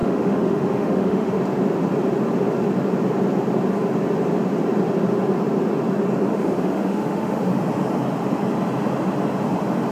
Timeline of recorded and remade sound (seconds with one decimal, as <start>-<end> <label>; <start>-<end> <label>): 0.0-1.4 remade; 1.4-6.3 recorded; 6.3-7.5 remade; 7.5-9.9 recorded